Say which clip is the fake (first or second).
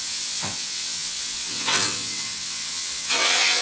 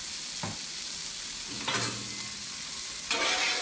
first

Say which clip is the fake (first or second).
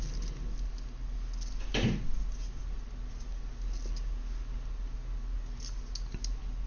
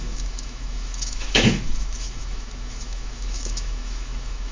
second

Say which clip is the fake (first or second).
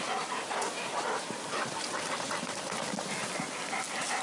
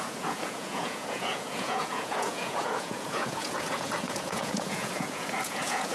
second